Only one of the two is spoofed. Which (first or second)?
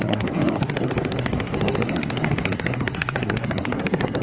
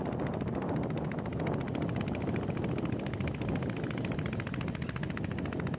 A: first